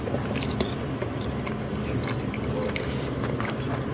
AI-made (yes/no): no